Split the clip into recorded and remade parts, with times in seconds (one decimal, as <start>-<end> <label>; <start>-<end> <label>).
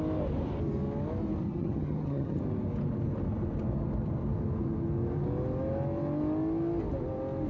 0.0-1.4 recorded; 1.4-2.4 remade; 2.4-7.5 recorded